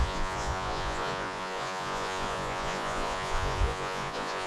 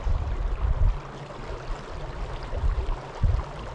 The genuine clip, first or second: second